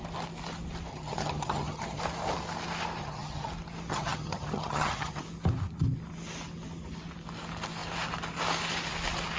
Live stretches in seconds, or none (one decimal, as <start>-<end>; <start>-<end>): 0.0-0.9; 2.0-3.0; 3.5-3.9; 5.2-9.4